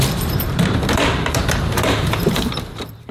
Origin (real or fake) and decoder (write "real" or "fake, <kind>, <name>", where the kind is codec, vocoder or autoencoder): fake, vocoder, BigVGAN v2